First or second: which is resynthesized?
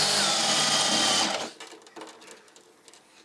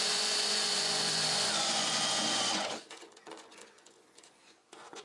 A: second